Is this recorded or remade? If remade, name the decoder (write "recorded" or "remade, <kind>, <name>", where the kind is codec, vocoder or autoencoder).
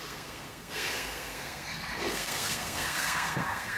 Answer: remade, codec, SNAC